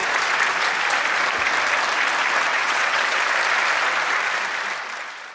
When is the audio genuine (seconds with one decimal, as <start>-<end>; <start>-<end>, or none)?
0.0-2.5; 3.2-5.3

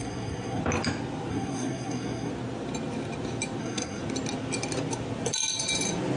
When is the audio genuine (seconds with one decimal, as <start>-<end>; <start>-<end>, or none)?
0.6-1.3; 2.3-3.6; 4.0-6.2

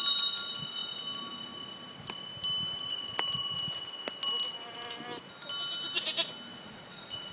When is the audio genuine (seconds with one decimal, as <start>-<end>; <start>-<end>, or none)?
0.0-6.5

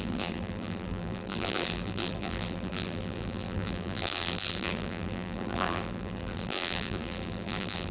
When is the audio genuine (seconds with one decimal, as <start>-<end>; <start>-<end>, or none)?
none

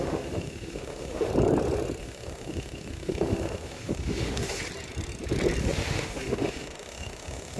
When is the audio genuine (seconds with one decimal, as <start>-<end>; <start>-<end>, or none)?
1.3-2.0; 4.6-5.6

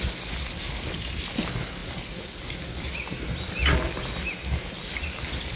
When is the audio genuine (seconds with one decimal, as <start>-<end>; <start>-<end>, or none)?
0.0-5.6